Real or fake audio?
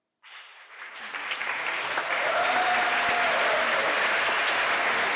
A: real